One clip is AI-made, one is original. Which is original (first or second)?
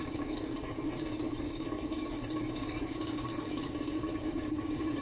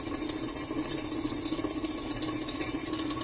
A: second